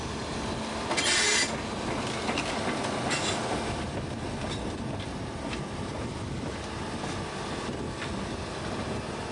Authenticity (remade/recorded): recorded